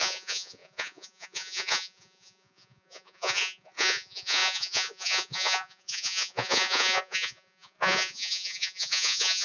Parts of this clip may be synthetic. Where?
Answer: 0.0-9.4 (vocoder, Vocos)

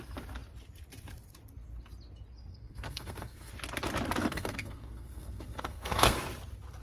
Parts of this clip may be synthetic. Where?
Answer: 2.5-3.5 (codec, SNAC); 4.2-6.2

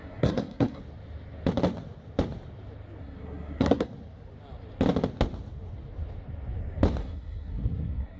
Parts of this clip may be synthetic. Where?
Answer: 0.0-0.8 (codec, SNAC); 3.0-3.9; 7.0-8.2

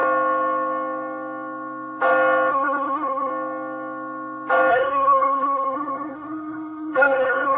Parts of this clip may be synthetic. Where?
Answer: 2.5-3.3 (codec, SNAC); 4.7-7.6

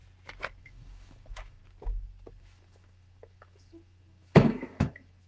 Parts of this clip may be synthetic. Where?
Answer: 0.6-1.6 (autoencoder, DAC-VAE); 2.4-5.3

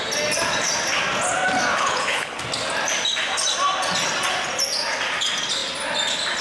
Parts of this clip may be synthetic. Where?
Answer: 1.7-2.4 (codec, HILCodec)